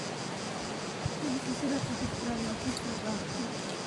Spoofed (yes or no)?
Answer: no